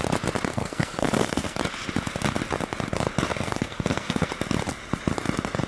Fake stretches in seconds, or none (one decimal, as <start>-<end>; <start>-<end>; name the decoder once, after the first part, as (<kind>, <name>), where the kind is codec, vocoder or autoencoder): 0.5-1.6 (codec, SNAC); 3.3-4.3

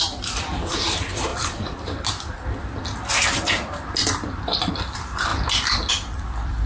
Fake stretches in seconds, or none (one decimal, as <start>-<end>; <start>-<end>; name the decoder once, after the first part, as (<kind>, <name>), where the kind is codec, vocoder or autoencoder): 0.0-5.3 (vocoder, BigVGAN v2); 5.9-6.7